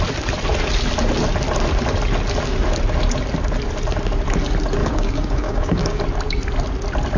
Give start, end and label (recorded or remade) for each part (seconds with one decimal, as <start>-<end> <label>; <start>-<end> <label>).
0.0-4.8 recorded; 4.8-6.0 remade; 6.0-7.2 recorded

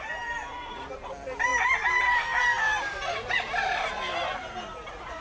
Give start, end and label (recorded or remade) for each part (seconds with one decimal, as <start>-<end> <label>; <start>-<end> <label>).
0.0-5.2 recorded

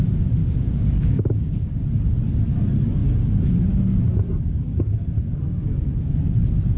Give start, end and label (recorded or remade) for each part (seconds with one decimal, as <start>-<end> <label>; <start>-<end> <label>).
0.0-0.4 recorded; 0.4-1.7 remade; 1.7-6.8 recorded

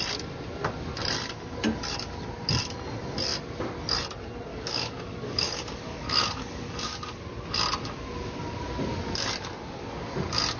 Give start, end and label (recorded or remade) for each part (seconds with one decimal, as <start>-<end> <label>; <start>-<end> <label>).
0.0-4.5 recorded; 4.5-7.2 remade; 7.2-10.6 recorded

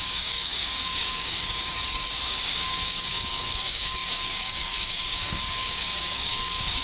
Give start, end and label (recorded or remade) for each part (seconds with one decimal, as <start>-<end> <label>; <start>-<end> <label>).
0.0-6.8 remade

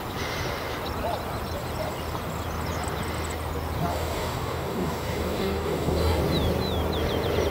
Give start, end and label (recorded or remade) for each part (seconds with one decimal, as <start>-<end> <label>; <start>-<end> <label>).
0.0-3.9 recorded; 3.9-6.2 remade; 6.2-7.5 recorded